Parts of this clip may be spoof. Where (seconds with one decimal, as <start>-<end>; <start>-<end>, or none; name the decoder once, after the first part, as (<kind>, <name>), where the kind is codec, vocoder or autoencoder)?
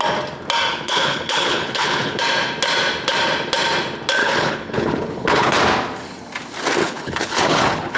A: 0.7-2.2 (codec, HILCodec); 4.2-5.6; 6.8-8.0